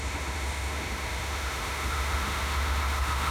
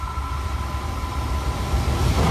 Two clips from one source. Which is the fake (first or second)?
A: first